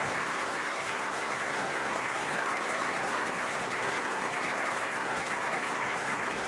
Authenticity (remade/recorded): remade